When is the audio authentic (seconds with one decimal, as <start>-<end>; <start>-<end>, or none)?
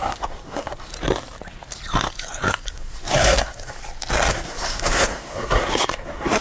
0.9-2.7; 3.8-4.3